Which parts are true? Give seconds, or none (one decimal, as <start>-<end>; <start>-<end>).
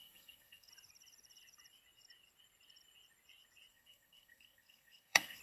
0.7-3.7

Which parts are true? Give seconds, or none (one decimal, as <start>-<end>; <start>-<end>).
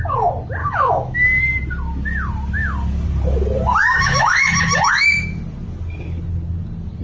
0.0-0.6; 1.4-3.8; 5.4-7.0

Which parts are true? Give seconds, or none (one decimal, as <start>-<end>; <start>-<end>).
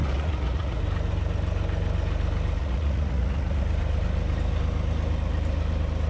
0.8-2.6; 3.6-6.1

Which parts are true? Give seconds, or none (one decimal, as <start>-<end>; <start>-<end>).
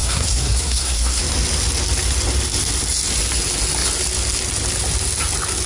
1.2-5.7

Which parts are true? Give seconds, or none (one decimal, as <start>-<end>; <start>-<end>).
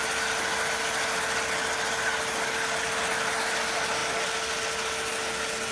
0.0-5.7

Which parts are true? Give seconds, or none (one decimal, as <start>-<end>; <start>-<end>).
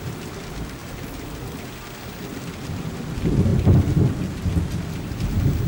0.0-5.7